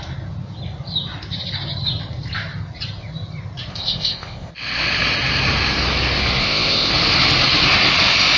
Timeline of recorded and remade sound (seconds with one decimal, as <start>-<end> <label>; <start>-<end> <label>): 0.0-3.7 recorded; 3.7-4.5 remade; 4.5-6.4 recorded; 6.4-6.9 remade; 6.9-8.4 recorded

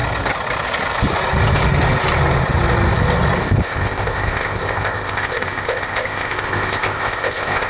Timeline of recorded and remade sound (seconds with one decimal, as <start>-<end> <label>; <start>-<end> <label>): 0.0-3.4 recorded; 3.4-7.7 remade

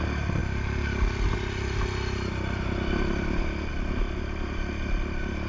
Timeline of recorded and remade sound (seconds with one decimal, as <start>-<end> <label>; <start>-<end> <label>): 0.0-5.5 recorded

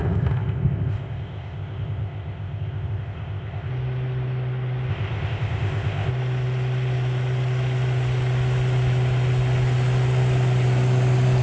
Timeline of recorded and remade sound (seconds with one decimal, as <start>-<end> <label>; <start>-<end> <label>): 0.0-3.7 remade; 3.7-4.9 recorded; 4.9-6.1 remade; 6.1-11.4 recorded

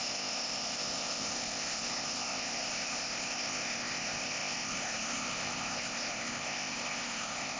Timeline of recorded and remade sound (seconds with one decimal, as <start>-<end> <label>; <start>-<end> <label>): 0.0-7.6 remade

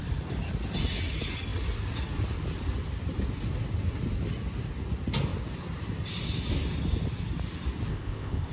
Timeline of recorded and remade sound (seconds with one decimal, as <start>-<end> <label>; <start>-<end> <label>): 0.0-7.9 recorded; 7.9-8.5 remade

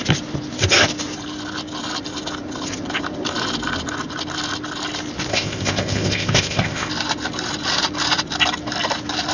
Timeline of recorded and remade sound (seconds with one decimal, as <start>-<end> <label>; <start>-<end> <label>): 0.0-5.3 recorded; 5.3-6.9 remade; 6.9-9.3 recorded

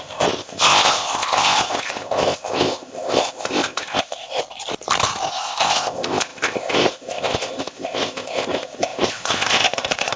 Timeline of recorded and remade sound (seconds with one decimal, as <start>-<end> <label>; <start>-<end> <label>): 0.0-4.4 remade; 4.4-5.3 recorded; 5.3-10.2 remade